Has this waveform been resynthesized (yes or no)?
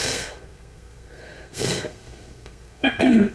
yes